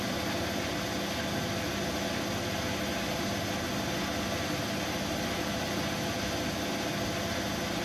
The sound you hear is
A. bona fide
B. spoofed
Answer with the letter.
A